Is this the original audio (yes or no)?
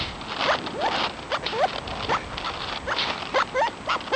yes